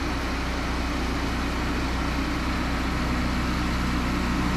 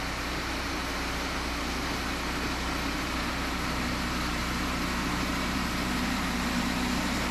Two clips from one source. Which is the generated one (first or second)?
second